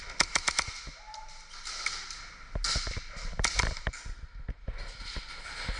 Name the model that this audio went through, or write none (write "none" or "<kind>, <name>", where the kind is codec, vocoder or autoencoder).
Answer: none